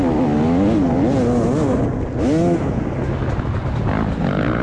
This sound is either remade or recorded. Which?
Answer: recorded